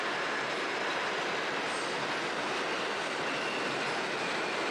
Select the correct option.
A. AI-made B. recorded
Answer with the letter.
B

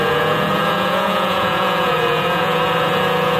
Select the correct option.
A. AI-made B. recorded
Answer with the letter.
A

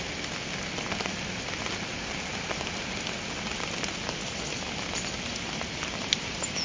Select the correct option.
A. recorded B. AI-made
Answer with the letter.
A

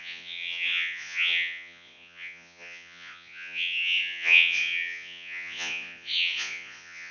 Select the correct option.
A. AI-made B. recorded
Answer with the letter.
A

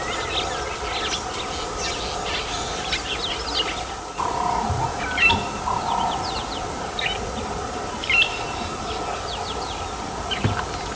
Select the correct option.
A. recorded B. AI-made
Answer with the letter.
A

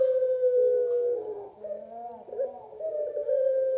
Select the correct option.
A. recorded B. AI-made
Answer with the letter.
A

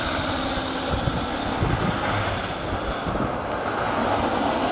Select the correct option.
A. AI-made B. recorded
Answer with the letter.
B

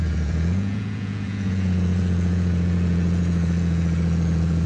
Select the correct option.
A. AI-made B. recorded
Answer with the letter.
A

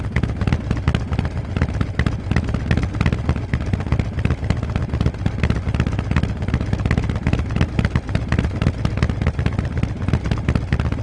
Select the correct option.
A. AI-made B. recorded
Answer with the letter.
B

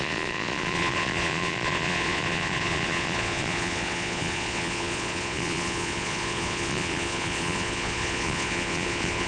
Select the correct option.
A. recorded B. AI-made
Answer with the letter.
B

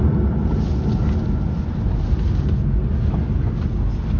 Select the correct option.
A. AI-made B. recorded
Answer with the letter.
B